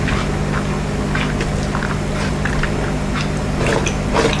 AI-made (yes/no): no